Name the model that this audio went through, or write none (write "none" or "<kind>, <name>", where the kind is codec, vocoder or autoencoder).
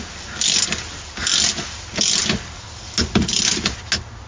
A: none